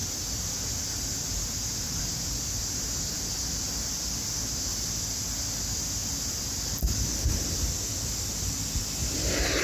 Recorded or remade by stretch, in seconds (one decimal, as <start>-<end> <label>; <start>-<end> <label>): 0.0-3.7 remade; 3.7-9.6 recorded